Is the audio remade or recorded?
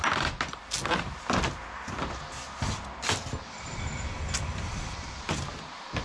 recorded